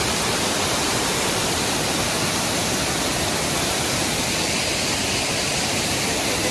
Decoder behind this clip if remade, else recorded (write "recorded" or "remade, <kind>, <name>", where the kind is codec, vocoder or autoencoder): remade, vocoder, BigVGAN v2